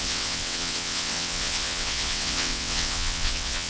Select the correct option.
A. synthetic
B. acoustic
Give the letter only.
A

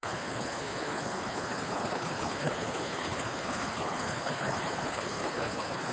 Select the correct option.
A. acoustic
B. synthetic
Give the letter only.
B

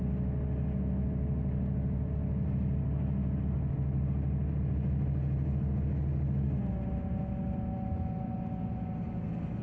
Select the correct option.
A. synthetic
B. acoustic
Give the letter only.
B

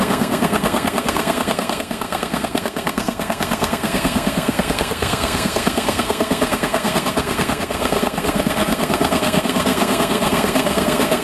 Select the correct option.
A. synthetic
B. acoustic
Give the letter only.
A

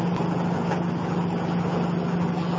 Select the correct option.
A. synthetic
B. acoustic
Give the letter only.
B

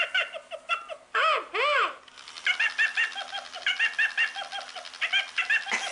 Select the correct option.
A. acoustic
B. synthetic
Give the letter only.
A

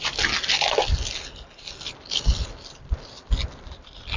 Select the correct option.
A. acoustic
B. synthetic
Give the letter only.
A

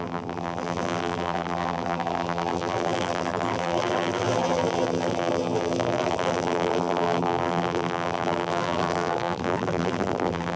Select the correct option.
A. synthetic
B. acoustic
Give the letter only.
A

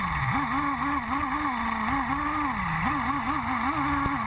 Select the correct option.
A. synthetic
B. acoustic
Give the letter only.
B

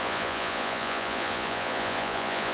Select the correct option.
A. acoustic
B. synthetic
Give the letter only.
B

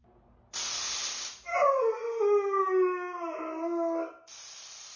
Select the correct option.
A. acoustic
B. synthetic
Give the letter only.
A